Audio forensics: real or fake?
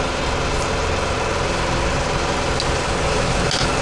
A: real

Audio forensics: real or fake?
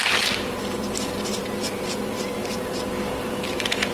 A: fake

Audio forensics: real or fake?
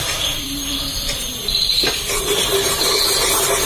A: fake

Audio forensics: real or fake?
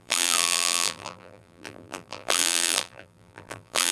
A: fake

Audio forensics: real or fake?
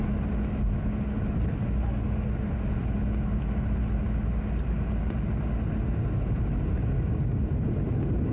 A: real